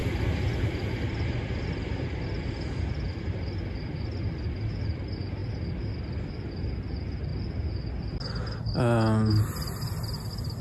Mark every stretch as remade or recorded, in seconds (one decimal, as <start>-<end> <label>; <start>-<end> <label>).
0.0-10.6 recorded